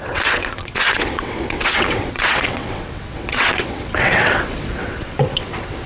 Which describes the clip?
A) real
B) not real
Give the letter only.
B